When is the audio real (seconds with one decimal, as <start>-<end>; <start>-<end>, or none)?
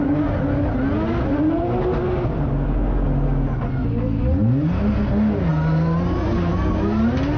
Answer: 0.0-7.4